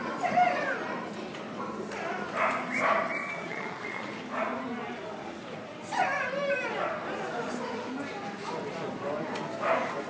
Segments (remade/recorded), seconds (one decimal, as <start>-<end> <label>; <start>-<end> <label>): 0.0-3.2 recorded; 3.2-4.1 remade; 4.1-10.1 recorded